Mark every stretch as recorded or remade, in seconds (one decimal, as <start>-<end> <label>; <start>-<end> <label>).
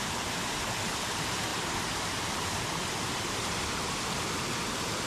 0.0-1.5 recorded; 1.5-4.2 remade; 4.2-5.1 recorded